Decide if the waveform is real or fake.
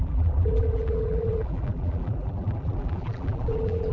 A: fake